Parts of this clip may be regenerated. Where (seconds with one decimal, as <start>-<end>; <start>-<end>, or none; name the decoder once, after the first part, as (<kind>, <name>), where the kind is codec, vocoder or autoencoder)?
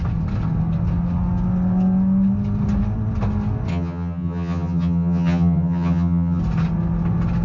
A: 3.7-6.4 (vocoder, HiFi-GAN)